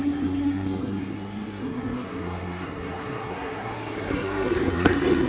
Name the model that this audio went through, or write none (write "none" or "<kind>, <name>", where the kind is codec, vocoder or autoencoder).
codec, SNAC